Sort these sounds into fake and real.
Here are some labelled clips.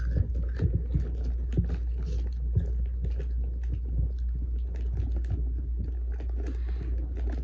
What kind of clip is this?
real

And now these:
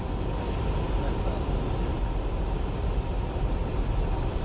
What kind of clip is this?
real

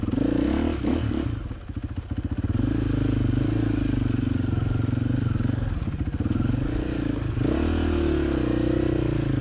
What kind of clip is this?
real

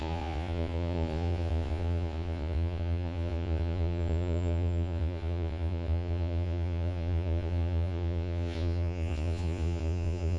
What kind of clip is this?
fake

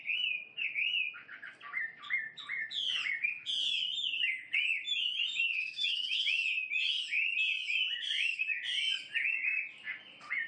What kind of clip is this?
real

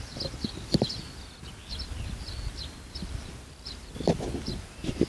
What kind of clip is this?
real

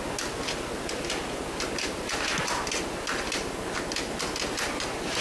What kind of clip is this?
real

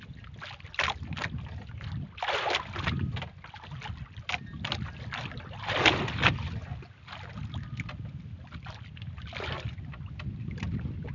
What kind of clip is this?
real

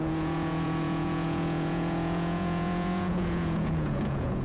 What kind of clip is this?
fake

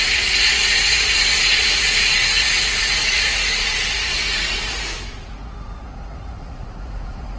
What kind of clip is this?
fake